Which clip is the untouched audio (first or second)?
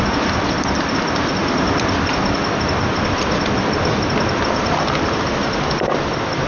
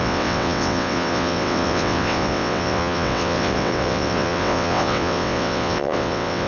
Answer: first